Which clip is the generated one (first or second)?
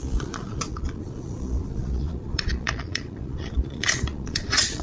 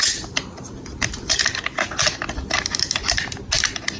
first